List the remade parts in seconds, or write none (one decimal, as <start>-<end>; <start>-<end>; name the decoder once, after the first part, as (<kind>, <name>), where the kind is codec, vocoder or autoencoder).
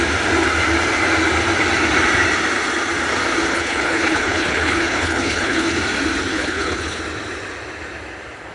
3.5-5.8 (codec, HILCodec); 6.3-7.0